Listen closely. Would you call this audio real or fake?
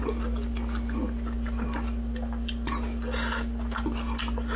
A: real